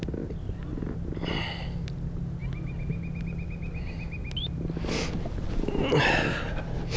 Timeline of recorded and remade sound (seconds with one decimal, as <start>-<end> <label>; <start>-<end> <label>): 0.0-7.0 recorded

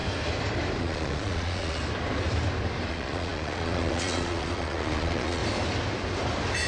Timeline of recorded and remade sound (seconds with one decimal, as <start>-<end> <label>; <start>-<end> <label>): 0.0-0.8 recorded; 0.8-1.8 remade; 1.8-2.9 recorded; 2.9-5.4 remade; 5.4-6.7 recorded

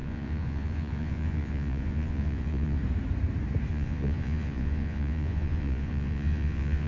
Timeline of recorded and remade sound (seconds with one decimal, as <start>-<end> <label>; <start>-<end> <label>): 0.0-2.8 remade; 2.8-3.7 recorded; 3.7-6.9 remade

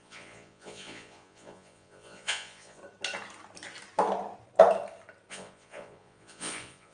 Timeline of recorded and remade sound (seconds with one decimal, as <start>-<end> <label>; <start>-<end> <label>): 0.0-2.8 remade; 2.8-5.3 recorded; 5.3-6.9 remade